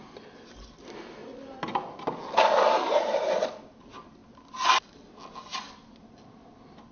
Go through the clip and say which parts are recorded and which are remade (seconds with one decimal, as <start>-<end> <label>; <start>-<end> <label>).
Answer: 0.0-6.9 recorded